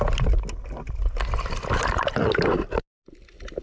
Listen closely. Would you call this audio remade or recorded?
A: recorded